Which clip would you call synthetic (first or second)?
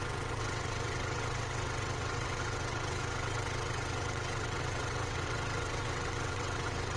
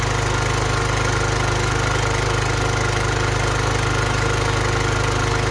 first